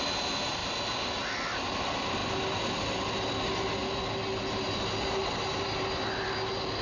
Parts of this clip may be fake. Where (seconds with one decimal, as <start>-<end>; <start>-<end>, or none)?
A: none